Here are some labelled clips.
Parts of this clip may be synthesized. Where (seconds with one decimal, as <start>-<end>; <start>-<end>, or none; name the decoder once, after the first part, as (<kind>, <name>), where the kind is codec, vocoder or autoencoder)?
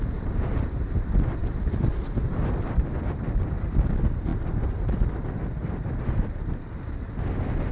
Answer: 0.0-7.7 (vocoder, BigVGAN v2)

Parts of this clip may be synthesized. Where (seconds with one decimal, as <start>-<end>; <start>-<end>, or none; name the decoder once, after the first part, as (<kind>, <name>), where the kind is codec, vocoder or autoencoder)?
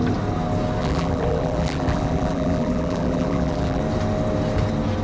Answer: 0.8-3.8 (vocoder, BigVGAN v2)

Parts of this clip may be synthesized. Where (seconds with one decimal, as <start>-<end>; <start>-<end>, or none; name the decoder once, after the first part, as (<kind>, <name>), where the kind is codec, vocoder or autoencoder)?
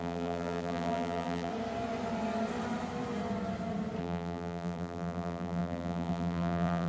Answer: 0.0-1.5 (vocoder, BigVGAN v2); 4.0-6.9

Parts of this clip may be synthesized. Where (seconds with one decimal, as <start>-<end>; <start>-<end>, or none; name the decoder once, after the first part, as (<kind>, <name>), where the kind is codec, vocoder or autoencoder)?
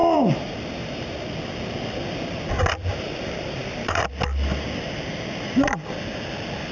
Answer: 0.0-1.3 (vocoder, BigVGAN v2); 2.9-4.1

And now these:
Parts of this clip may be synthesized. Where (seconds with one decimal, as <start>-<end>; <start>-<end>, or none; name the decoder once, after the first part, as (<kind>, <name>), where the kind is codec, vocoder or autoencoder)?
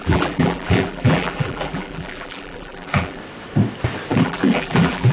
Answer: 0.0-3.2 (vocoder, BigVGAN v2); 4.1-5.1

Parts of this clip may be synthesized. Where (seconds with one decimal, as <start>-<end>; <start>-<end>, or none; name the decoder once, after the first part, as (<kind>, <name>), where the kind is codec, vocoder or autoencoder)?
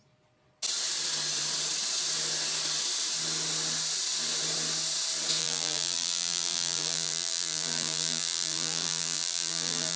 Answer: 5.4-10.0 (vocoder, BigVGAN v2)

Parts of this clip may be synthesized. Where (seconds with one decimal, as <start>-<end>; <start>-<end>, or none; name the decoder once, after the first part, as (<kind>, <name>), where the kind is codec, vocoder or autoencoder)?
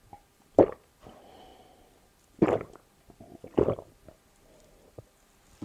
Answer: none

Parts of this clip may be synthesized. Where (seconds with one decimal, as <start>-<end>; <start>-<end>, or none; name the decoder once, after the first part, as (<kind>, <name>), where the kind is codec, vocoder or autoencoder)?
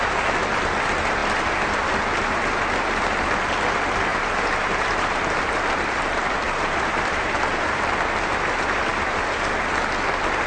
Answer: 4.1-8.0 (vocoder, BigVGAN v2); 8.9-9.6